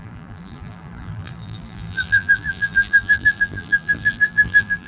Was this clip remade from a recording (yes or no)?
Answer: yes